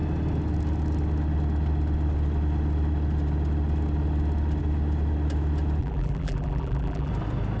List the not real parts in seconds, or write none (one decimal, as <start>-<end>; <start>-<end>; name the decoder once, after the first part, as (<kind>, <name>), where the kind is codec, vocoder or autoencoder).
5.8-7.1 (vocoder, BigVGAN v2)